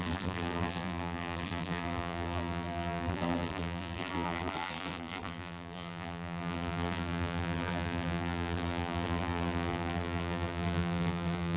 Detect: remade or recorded remade